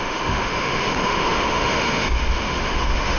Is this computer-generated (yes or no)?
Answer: yes